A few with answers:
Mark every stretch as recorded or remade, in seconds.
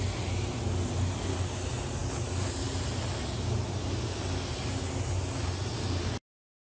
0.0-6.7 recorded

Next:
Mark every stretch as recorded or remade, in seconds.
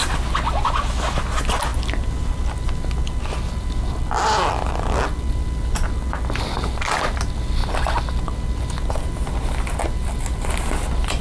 0.0-11.2 recorded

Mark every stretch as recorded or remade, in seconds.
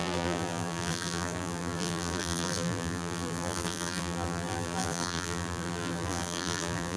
0.0-7.0 remade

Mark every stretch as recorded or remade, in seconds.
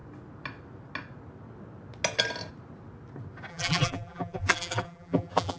0.0-3.5 recorded; 3.5-5.6 remade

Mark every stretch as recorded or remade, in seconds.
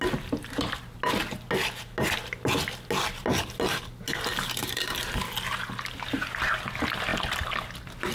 0.0-8.1 recorded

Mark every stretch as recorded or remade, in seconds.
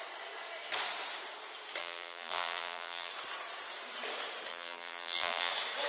0.0-1.8 recorded; 1.8-3.1 remade; 3.1-4.5 recorded; 4.5-5.5 remade; 5.5-5.9 recorded